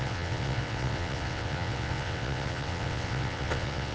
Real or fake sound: fake